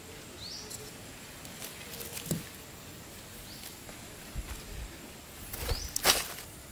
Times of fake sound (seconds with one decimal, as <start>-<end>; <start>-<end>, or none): none